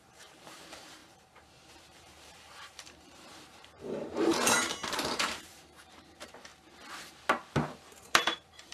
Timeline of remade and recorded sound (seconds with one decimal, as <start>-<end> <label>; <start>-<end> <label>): 0.0-6.5 remade; 6.5-8.0 recorded; 8.0-8.7 remade